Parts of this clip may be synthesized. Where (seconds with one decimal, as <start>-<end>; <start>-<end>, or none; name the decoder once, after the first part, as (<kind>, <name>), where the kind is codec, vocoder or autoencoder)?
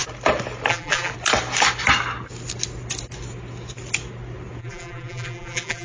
0.7-1.1 (vocoder, BigVGAN v2); 4.6-5.8